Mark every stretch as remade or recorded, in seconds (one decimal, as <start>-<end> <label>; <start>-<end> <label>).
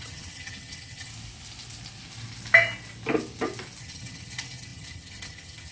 0.0-1.1 remade; 1.1-3.8 recorded; 3.8-5.7 remade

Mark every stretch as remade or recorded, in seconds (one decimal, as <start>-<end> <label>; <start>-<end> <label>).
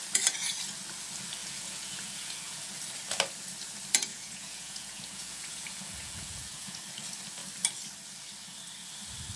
0.0-1.4 recorded; 1.4-2.8 remade; 2.8-4.1 recorded; 4.1-6.8 remade; 6.8-9.4 recorded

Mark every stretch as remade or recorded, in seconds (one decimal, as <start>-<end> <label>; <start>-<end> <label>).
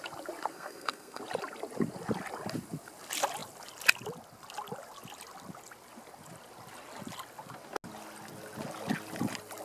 0.0-0.5 recorded; 0.5-1.2 remade; 1.2-9.6 recorded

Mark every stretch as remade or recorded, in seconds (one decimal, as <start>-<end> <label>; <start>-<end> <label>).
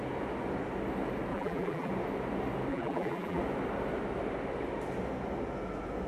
0.0-1.3 recorded; 1.3-1.9 remade; 1.9-2.7 recorded; 2.7-3.4 remade; 3.4-6.1 recorded